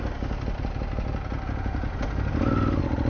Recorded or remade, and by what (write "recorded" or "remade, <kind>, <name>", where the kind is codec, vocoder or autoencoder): recorded